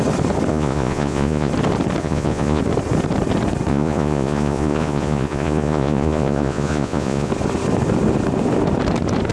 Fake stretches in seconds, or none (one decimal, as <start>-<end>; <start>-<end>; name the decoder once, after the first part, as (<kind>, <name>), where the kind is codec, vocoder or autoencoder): 0.5-1.5 (vocoder, Vocos); 2.0-2.6; 3.7-7.3